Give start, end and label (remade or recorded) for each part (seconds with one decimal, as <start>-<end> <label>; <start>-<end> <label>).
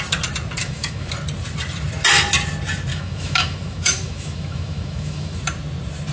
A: 0.0-0.6 recorded; 0.6-1.1 remade; 1.1-2.9 recorded; 2.9-5.4 remade; 5.4-6.1 recorded